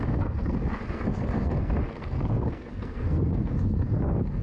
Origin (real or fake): fake